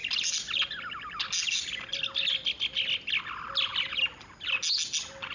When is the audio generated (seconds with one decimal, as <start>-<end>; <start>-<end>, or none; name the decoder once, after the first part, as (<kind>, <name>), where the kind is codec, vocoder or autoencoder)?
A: none